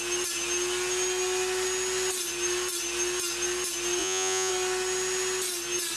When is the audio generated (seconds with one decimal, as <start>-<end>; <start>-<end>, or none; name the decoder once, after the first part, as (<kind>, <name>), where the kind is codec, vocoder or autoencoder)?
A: 4.0-4.5 (vocoder, Vocos)